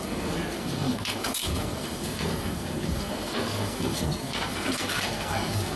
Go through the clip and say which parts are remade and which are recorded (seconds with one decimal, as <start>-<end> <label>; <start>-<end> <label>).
0.0-5.8 remade